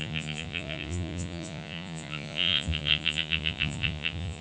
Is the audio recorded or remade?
remade